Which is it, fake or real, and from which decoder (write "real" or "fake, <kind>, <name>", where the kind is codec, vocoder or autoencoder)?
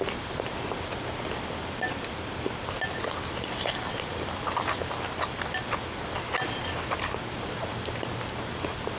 real